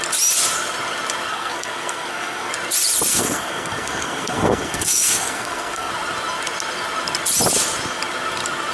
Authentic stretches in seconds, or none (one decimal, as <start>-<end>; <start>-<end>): 0.0-1.3; 2.5-3.1; 5.9-8.7